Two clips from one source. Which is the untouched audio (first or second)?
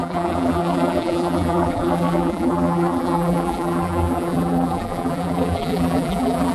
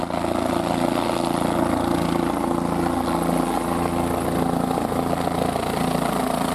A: second